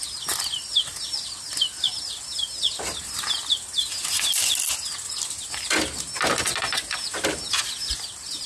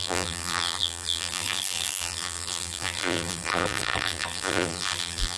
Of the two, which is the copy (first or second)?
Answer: second